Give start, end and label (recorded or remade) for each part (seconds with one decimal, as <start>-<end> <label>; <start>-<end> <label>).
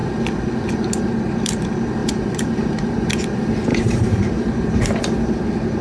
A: 0.0-2.0 recorded; 2.0-3.1 remade; 3.1-3.7 recorded; 3.7-4.8 remade; 4.8-5.8 recorded